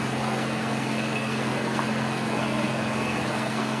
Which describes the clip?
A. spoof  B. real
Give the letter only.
A